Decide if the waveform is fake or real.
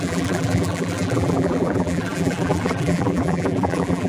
fake